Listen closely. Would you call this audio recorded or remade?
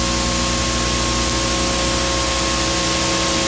recorded